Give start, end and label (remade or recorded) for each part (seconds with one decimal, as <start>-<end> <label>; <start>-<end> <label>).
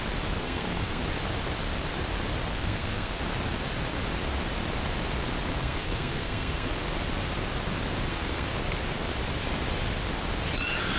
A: 0.0-0.4 recorded; 0.4-1.0 remade; 1.0-2.5 recorded; 2.5-3.2 remade; 3.2-5.5 recorded; 5.5-6.9 remade; 6.9-8.1 recorded; 8.1-8.6 remade; 8.6-11.0 recorded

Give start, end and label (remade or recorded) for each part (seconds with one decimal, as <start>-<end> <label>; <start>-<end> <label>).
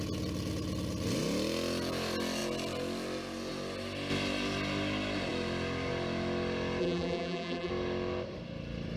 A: 0.0-6.8 recorded; 6.8-7.7 remade; 7.7-9.0 recorded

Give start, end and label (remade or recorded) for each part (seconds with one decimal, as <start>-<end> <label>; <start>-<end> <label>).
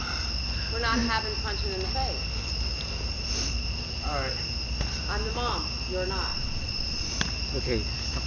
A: 0.0-6.3 recorded; 6.3-7.1 remade; 7.1-8.3 recorded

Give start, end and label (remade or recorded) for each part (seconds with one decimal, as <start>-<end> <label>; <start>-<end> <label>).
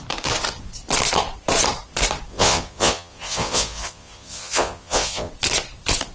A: 0.0-2.3 recorded; 2.3-5.3 remade; 5.3-6.1 recorded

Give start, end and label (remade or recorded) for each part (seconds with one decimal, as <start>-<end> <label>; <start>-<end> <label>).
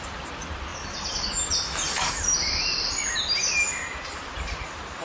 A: 0.0-5.0 recorded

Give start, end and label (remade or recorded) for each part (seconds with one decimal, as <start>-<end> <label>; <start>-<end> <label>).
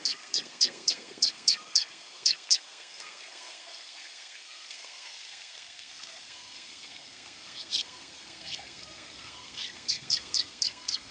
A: 0.0-11.1 remade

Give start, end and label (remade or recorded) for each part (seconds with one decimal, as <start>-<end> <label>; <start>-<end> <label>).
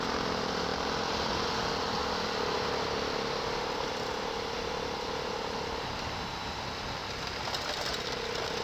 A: 0.0-8.6 recorded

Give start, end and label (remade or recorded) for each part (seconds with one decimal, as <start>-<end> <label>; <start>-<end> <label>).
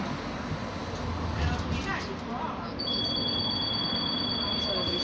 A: 0.0-5.0 recorded